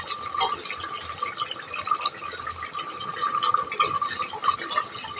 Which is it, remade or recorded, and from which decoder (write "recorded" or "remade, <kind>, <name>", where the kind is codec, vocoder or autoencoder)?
recorded